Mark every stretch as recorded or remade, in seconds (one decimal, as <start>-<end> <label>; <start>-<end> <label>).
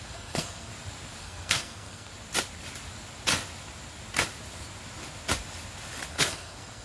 0.0-0.7 remade; 0.7-1.2 recorded; 1.2-2.1 remade; 2.1-6.1 recorded; 6.1-6.8 remade